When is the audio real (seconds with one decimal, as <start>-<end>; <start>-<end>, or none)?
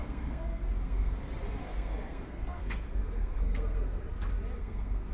1.2-1.6; 4.0-4.6